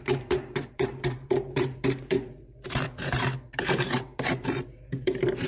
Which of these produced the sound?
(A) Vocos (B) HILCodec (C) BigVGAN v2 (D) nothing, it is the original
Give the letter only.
C